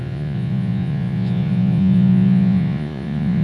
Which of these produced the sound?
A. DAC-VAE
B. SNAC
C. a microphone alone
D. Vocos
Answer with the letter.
D